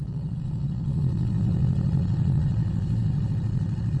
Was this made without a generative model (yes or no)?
no